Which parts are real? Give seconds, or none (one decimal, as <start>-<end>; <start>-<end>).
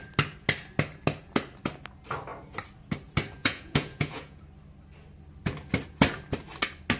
0.0-3.4; 4.4-7.0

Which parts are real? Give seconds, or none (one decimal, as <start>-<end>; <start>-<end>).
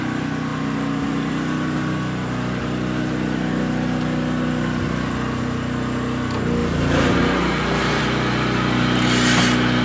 0.0-6.6; 8.0-9.8